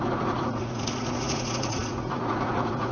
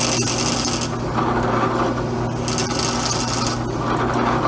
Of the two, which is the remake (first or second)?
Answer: first